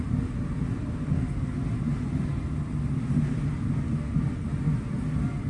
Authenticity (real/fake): real